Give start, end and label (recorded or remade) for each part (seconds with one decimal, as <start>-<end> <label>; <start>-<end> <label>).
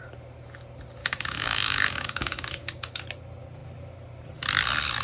0.0-1.0 recorded; 1.0-3.0 remade; 3.0-5.0 recorded